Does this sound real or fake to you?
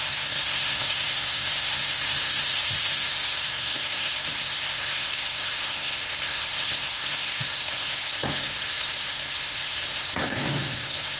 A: fake